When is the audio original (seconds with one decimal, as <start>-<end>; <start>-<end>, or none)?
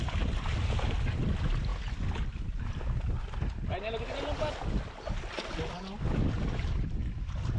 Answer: 0.0-7.6